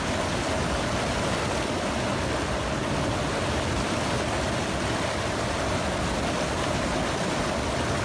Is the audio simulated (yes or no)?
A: no